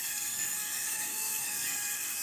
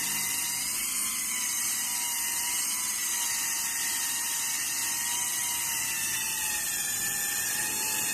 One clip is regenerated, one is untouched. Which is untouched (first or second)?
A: second